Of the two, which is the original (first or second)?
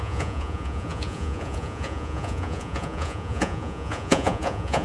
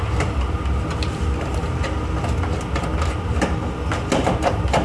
second